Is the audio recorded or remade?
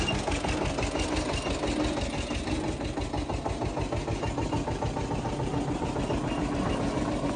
recorded